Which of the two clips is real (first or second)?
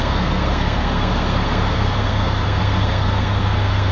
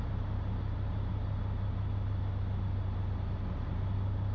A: second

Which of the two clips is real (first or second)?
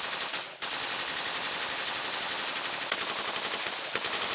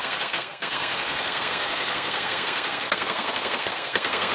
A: first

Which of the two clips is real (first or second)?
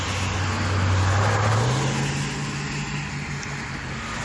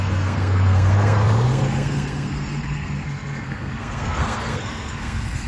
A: first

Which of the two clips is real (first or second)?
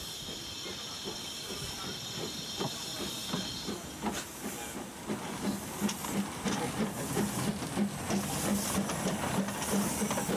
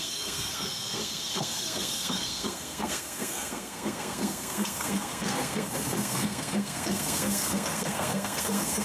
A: first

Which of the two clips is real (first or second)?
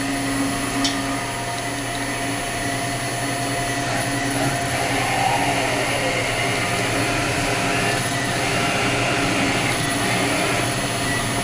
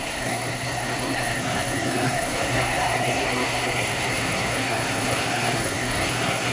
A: first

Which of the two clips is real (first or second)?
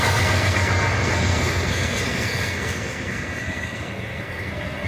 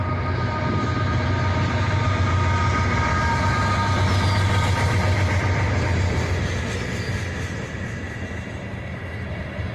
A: second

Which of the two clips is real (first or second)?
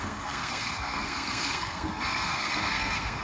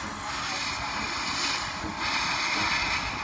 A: second